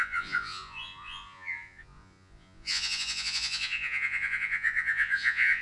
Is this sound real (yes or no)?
no